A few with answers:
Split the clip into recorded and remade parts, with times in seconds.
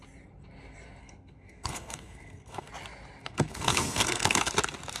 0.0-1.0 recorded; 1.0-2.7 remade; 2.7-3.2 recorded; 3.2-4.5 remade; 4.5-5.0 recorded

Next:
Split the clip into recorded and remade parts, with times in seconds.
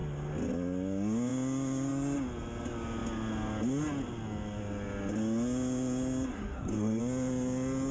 0.0-6.3 recorded; 6.3-7.0 remade; 7.0-7.9 recorded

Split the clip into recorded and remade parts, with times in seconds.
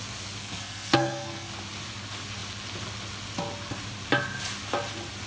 0.0-0.4 recorded; 0.4-1.5 remade; 1.5-5.3 recorded